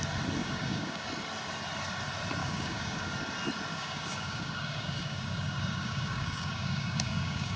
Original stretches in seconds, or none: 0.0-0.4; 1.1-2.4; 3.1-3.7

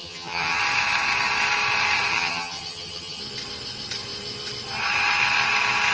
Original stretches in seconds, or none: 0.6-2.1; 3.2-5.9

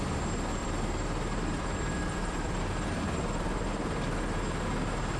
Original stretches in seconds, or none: 0.0-0.6; 3.7-5.2

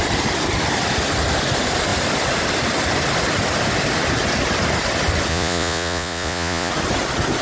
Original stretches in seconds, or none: 0.0-5.3; 6.7-7.4

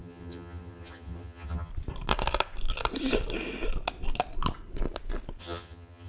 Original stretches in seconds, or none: 1.7-5.4

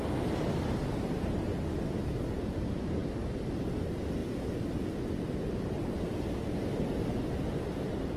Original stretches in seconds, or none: 0.0-8.2

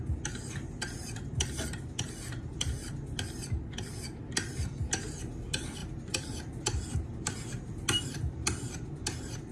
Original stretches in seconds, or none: 0.0-9.5

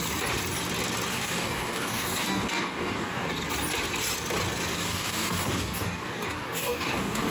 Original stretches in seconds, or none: 0.0-1.1; 3.3-4.7